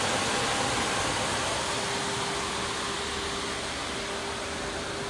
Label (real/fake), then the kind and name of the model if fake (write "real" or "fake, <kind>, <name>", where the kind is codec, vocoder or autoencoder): real